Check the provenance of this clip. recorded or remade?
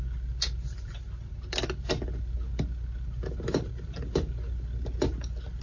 recorded